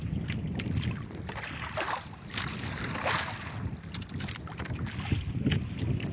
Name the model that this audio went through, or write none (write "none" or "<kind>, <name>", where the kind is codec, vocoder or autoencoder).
none